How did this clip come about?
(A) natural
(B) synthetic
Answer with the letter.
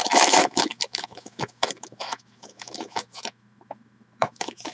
B